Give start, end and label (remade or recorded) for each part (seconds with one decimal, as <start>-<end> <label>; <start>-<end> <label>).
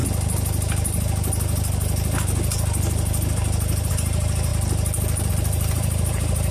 0.0-3.9 recorded; 3.9-4.5 remade; 4.5-5.3 recorded; 5.3-6.5 remade